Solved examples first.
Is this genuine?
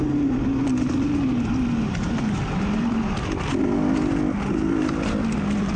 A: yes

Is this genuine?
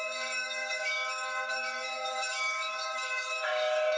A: no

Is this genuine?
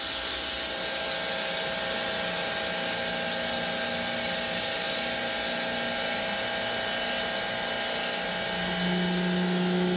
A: yes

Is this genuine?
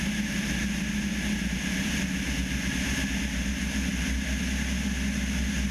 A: yes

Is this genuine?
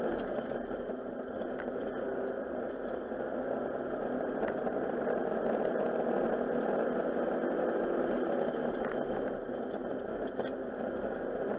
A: yes